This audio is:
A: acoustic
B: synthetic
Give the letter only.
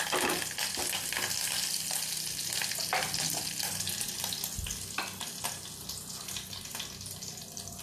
A